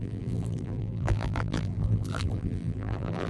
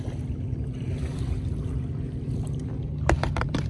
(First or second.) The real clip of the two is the second